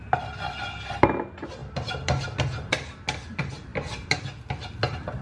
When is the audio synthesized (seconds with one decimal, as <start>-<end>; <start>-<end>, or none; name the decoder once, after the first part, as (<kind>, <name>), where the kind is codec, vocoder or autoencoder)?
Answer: none